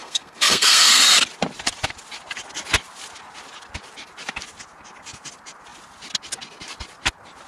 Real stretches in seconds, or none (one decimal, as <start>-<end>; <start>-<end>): 1.0-7.5